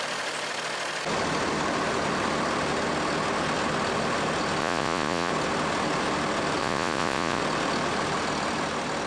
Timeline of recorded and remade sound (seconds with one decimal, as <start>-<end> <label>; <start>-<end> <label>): 0.0-4.6 recorded; 4.6-5.3 remade; 5.3-6.6 recorded; 6.6-7.4 remade; 7.4-9.1 recorded